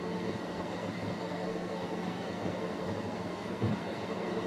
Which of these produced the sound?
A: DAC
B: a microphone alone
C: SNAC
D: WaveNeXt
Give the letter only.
C